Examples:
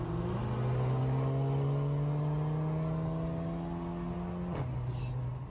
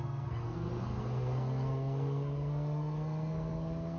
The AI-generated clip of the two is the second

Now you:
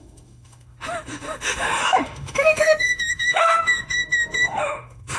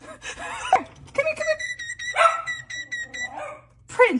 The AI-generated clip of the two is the first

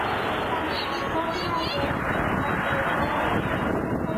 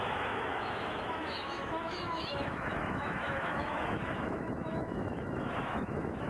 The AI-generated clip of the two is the second